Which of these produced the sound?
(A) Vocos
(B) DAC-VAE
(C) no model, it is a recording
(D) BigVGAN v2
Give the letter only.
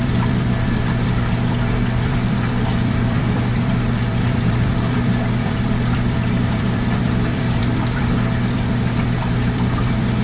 D